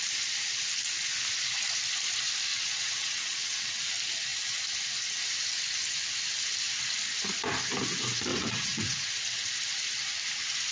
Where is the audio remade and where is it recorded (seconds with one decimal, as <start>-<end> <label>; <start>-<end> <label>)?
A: 0.0-2.5 recorded; 2.5-3.8 remade; 3.8-8.3 recorded; 8.3-9.1 remade; 9.1-10.7 recorded